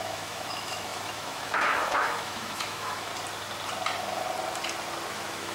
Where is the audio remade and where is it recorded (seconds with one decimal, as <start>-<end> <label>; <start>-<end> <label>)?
0.0-3.1 remade; 3.1-5.1 recorded; 5.1-5.5 remade